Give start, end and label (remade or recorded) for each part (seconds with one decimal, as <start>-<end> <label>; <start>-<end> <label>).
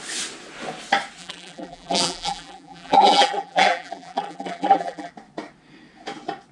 0.0-1.2 recorded; 1.2-5.1 remade; 5.1-6.5 recorded